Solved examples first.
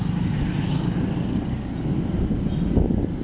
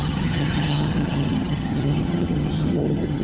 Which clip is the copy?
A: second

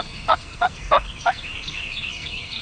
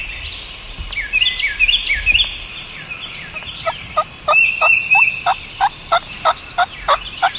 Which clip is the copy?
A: first